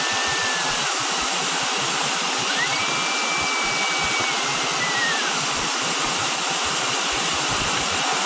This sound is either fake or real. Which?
real